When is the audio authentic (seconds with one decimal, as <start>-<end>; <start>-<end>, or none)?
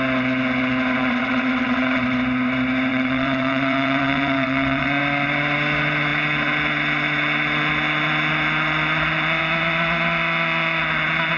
0.0-1.0; 2.0-2.9; 5.0-11.4